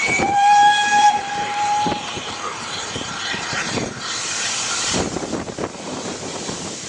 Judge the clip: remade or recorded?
remade